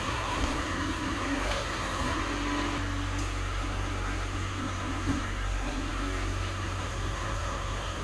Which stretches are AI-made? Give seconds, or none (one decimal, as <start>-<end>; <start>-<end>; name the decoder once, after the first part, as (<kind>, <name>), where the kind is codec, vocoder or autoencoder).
0.0-2.2 (codec, SNAC); 3.2-8.0